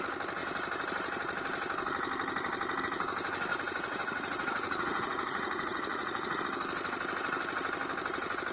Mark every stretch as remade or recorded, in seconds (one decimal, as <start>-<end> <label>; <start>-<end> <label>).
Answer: 0.0-3.5 recorded; 3.5-6.4 remade; 6.4-8.5 recorded